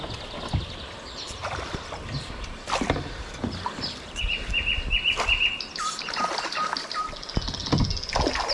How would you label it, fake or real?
real